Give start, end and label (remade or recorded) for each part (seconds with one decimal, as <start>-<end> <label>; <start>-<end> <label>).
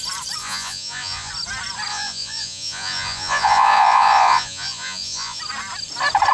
0.0-0.4 recorded; 0.4-1.3 remade; 1.3-1.9 recorded; 1.9-5.4 remade; 5.4-6.3 recorded